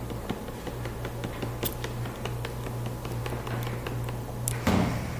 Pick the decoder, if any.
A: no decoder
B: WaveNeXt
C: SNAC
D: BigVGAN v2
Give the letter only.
A